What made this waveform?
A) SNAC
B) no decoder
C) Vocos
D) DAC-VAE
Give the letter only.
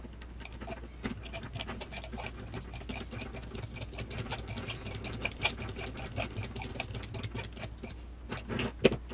B